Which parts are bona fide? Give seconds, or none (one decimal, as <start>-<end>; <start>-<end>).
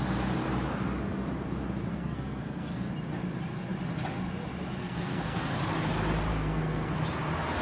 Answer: 0.0-1.9; 2.9-4.8; 5.5-6.3; 6.9-7.6